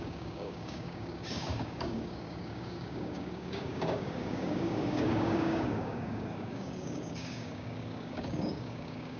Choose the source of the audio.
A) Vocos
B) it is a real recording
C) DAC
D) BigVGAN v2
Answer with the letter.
C